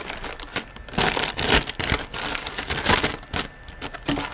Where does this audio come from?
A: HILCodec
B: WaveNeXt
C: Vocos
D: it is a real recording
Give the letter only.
D